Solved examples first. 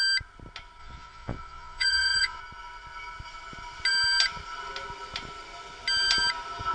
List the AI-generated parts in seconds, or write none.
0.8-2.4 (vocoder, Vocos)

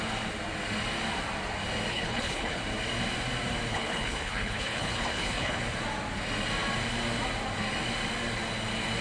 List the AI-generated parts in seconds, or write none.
1.9-2.6 (codec, HILCodec); 3.7-5.6

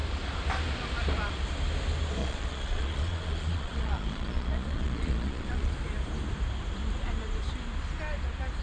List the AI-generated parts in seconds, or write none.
2.2-5.7 (vocoder, Vocos)

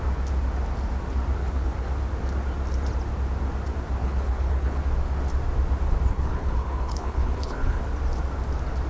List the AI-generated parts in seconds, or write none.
1.4-1.9 (codec, HILCodec); 4.0-4.8; 6.1-7.8

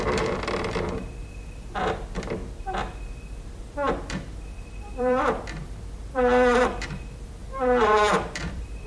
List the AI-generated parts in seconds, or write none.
0.0-2.4 (vocoder, BigVGAN v2); 3.6-8.9

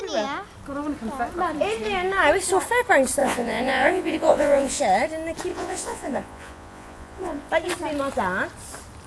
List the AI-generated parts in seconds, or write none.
3.2-4.8 (vocoder, Vocos); 5.5-7.5

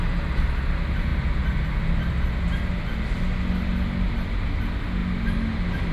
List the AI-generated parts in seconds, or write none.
none

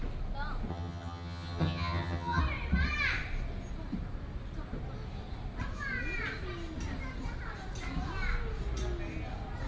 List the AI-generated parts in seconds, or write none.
0.7-2.4 (vocoder, HiFi-GAN)